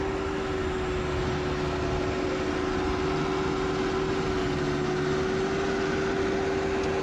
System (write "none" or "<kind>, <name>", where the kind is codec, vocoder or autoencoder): none